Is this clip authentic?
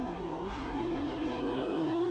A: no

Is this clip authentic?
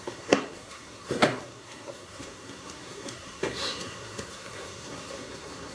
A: no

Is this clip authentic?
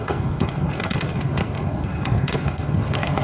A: no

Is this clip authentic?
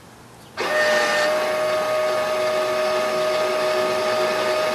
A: yes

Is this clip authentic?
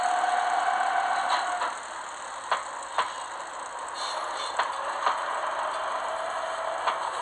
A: yes